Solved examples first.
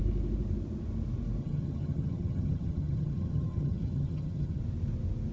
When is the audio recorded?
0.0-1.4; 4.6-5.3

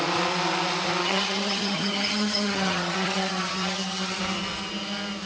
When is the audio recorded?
0.0-1.0; 4.2-5.3

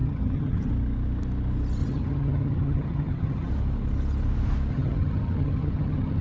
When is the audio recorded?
0.7-1.8; 3.5-4.7